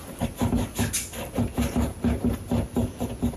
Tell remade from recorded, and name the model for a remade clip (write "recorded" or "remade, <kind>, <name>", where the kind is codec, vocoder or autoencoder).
recorded